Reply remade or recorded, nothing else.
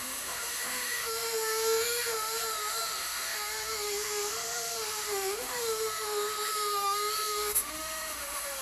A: remade